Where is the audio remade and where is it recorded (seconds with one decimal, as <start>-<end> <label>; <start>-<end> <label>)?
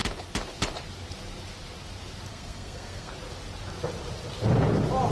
0.0-2.3 recorded; 2.3-3.1 remade; 3.1-5.1 recorded